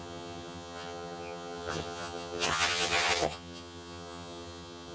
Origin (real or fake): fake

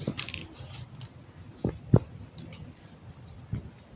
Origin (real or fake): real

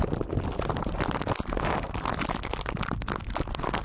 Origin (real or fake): real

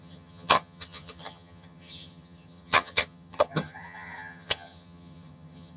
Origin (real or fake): fake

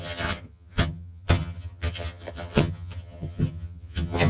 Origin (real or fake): fake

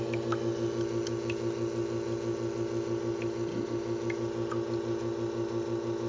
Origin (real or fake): real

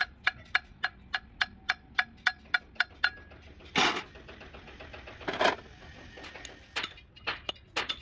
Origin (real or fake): real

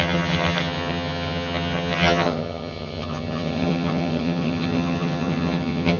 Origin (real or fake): fake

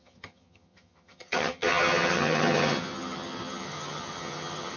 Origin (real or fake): fake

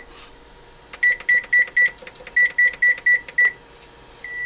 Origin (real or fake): real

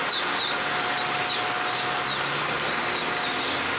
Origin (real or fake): real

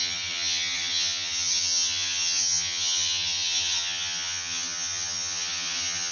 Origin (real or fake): fake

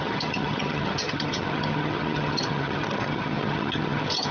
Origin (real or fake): fake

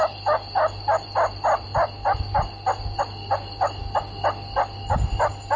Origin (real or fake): real